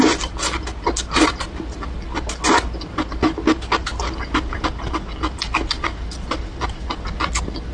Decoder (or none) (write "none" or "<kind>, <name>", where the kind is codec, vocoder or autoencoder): none